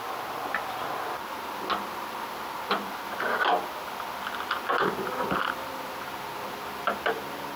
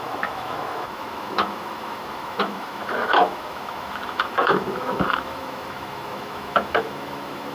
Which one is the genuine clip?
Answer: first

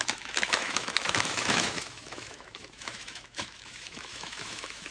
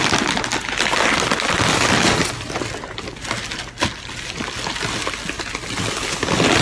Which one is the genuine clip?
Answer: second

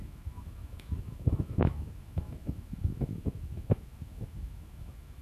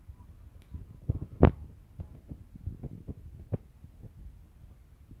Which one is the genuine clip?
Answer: second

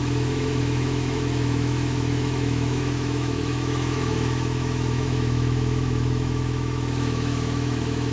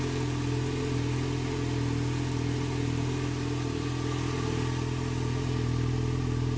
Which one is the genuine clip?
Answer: second